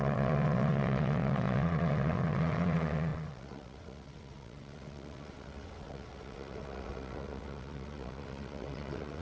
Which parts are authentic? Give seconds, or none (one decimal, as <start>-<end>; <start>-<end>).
none

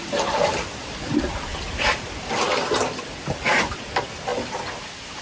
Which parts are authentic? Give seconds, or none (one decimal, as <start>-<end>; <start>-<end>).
0.0-1.5; 2.3-5.2